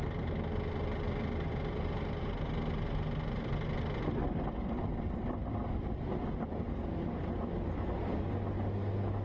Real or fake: real